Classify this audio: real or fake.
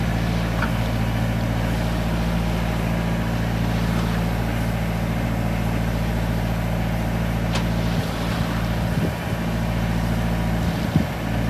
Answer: real